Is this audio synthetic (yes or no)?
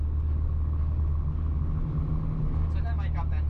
no